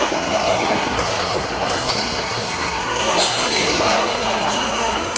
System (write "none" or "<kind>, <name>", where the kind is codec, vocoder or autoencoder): codec, SNAC